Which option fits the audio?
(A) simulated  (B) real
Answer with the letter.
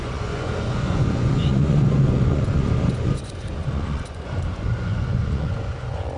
A